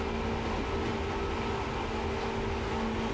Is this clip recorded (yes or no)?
yes